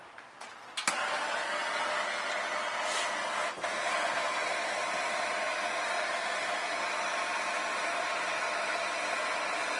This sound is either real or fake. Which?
real